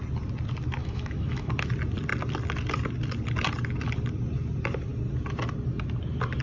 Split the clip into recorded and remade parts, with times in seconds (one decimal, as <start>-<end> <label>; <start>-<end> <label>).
0.0-0.8 recorded; 0.8-1.5 remade; 1.5-6.4 recorded